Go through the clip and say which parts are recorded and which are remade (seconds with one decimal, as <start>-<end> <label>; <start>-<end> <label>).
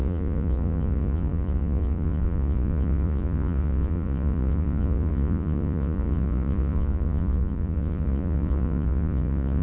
0.0-9.6 remade